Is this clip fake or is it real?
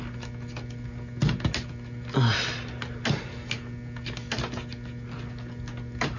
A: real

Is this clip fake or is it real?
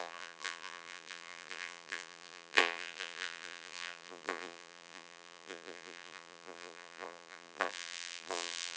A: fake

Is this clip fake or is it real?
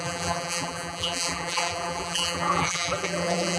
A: fake